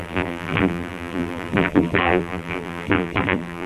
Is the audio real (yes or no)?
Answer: no